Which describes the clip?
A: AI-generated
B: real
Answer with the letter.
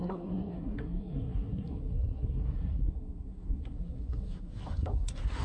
A